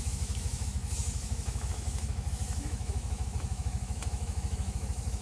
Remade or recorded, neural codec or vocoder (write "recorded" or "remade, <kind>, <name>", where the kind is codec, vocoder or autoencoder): remade, autoencoder, DAC-VAE